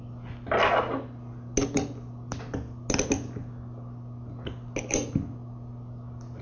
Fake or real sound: real